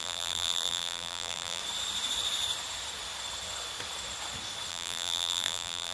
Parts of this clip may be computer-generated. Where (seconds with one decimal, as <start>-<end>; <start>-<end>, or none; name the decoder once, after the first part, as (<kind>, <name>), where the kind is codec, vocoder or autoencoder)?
0.0-1.6 (vocoder, BigVGAN v2); 4.7-5.9